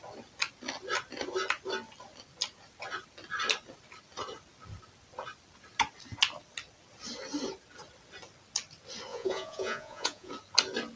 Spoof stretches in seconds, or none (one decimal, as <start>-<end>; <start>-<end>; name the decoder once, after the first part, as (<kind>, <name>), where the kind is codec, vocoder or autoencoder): 9.1-10.3 (vocoder, Vocos)